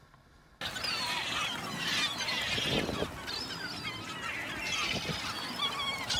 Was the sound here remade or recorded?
recorded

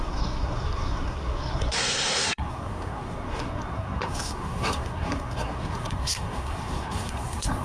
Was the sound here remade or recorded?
remade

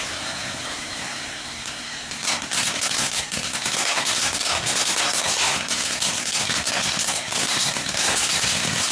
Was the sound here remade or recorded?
remade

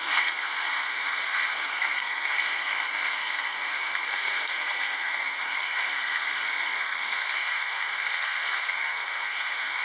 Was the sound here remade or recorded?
remade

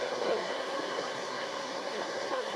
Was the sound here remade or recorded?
remade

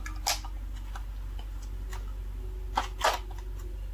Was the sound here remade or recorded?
recorded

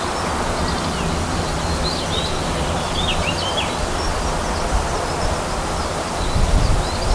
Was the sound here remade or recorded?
recorded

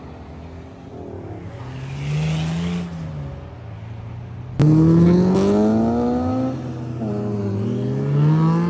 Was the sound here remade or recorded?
recorded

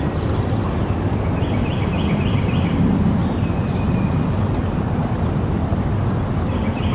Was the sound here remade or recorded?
recorded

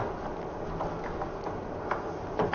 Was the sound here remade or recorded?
recorded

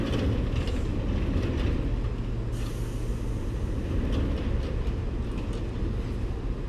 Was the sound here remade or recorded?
recorded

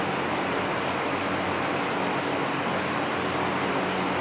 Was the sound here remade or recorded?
recorded